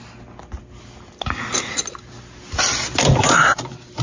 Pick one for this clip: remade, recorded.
recorded